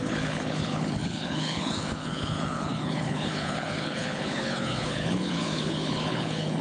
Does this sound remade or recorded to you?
remade